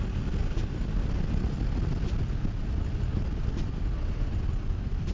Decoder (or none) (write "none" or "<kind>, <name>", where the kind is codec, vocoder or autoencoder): none